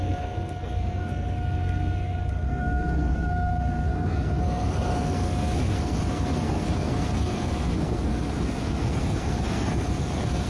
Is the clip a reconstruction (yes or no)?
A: yes